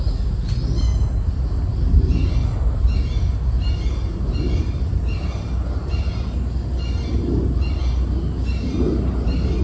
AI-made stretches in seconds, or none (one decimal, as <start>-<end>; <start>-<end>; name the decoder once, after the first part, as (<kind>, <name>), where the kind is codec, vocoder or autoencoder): none